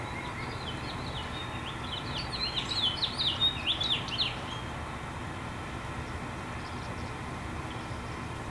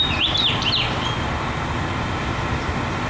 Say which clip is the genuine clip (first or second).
first